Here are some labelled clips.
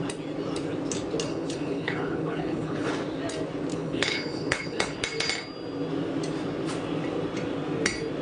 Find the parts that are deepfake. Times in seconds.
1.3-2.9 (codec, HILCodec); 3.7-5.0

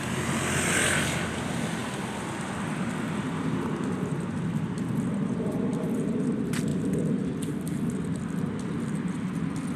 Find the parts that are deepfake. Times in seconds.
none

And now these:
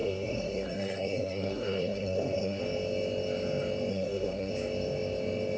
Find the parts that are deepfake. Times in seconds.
0.0-2.6 (codec, SNAC); 3.9-4.5

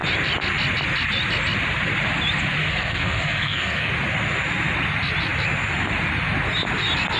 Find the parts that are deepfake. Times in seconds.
2.6-3.9 (codec, SNAC)

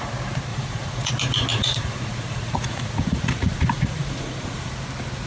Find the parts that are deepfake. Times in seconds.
0.5-1.1 (vocoder, Vocos); 1.5-4.7

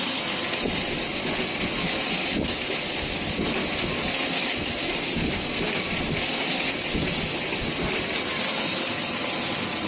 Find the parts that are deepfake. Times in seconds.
none

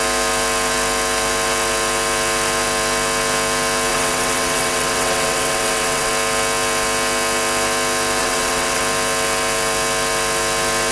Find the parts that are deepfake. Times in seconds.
3.9-6.1 (vocoder, WaveNeXt); 8.2-8.8

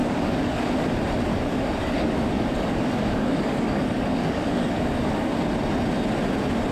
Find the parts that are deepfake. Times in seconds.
0.0-0.6 (codec, DAC); 1.3-5.3